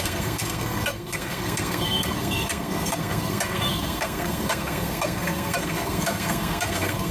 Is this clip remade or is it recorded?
remade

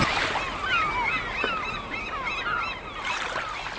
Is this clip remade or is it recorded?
recorded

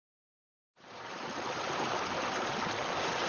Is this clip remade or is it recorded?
remade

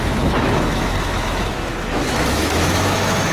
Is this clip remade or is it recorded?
remade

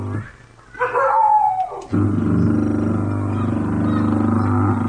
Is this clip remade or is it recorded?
recorded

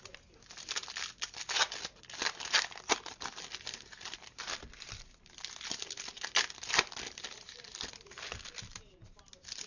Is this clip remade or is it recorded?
recorded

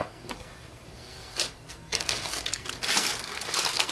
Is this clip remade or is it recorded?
remade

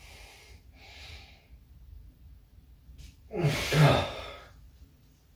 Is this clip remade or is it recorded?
remade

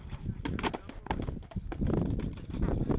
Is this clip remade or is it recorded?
recorded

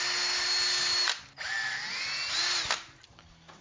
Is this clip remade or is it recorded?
recorded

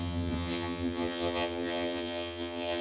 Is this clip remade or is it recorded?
remade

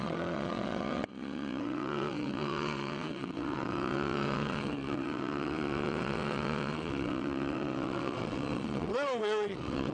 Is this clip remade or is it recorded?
remade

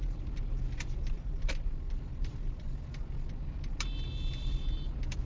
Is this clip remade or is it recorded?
remade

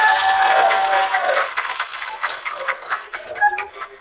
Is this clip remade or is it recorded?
remade